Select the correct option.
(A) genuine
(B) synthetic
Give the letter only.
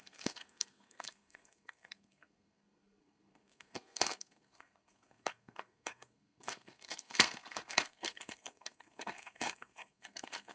B